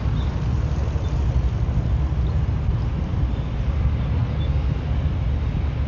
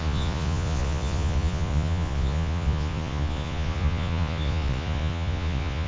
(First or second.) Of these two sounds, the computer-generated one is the second